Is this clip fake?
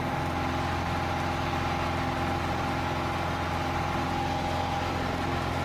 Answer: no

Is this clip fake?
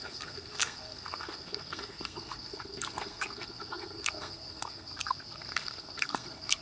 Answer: yes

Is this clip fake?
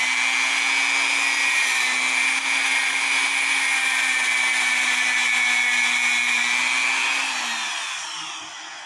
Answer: no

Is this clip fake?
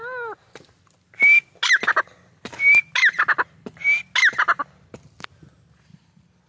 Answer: no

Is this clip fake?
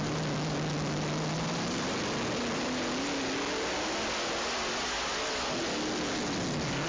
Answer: no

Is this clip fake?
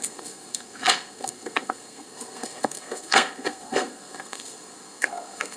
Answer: yes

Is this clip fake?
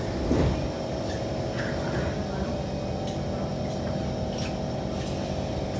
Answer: no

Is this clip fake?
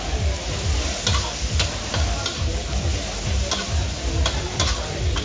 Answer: no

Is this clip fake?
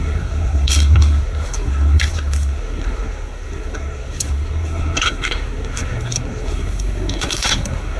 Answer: yes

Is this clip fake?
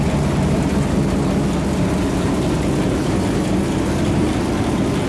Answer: no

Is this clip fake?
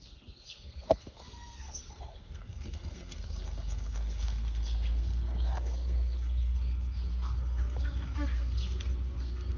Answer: yes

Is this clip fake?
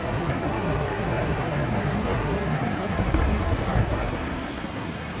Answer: yes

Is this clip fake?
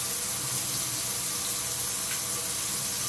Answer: no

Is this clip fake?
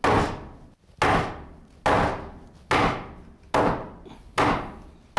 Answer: no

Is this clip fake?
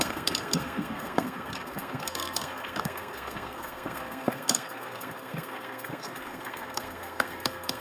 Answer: yes